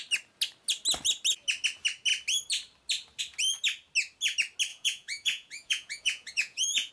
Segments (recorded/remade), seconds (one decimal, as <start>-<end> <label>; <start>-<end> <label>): 0.0-4.7 recorded; 4.7-6.9 remade